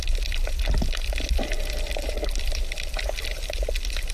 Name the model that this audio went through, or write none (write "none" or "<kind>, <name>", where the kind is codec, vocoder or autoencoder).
none